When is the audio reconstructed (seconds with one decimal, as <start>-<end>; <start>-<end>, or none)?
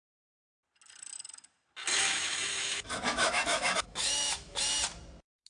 1.9-4.6